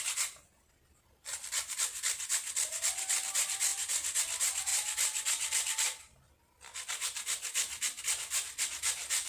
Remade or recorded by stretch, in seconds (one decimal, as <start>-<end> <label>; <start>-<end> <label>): 0.0-3.7 recorded; 3.7-4.2 remade; 4.2-9.3 recorded